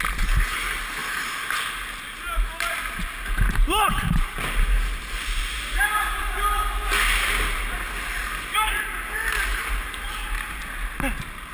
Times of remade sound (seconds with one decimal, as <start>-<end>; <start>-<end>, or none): 9.5-10.6